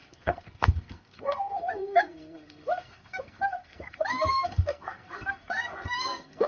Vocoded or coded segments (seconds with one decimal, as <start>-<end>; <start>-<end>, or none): 0.0-6.5